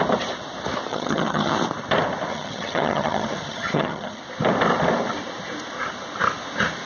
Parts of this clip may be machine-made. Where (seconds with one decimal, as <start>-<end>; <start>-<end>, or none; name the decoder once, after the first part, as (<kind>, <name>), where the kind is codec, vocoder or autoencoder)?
0.9-1.5 (vocoder, HiFi-GAN); 2.3-4.2